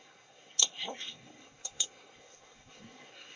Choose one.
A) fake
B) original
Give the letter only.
A